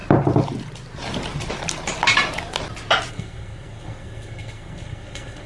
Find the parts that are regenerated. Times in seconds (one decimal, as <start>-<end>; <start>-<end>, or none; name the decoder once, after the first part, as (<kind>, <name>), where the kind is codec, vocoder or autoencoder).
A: 3.1-5.5 (codec, SNAC)